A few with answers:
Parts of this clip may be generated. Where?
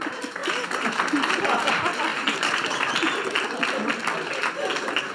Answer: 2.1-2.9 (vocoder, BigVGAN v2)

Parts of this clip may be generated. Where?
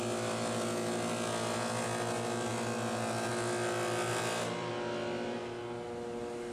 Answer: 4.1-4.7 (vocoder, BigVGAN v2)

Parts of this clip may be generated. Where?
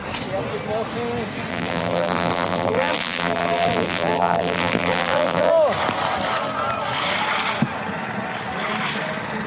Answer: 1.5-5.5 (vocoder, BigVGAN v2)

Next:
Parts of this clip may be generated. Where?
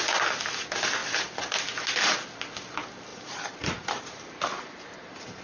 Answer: 3.1-5.4 (vocoder, BigVGAN v2)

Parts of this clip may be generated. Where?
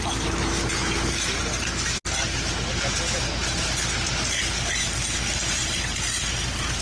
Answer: 3.4-4.4 (vocoder, BigVGAN v2)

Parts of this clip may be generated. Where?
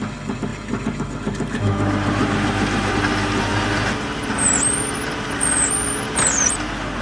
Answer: 0.5-2.9 (vocoder, BigVGAN v2)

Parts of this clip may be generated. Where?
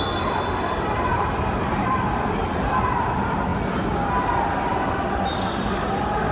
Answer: 1.1-2.2 (vocoder, BigVGAN v2)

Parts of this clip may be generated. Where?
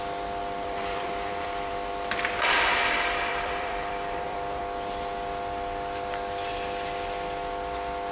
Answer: 0.4-4.6 (vocoder, BigVGAN v2)